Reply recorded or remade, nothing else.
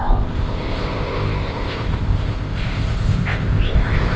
remade